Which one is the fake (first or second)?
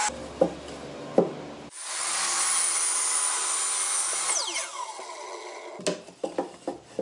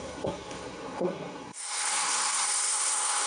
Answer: second